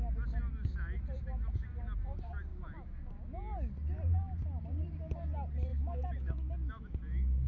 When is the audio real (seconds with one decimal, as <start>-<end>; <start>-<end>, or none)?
0.0-5.7; 6.5-7.5